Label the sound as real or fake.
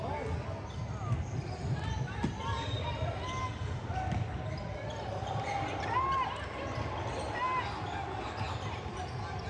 real